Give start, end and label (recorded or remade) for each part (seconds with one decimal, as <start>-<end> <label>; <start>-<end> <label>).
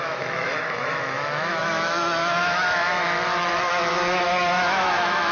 0.0-5.3 remade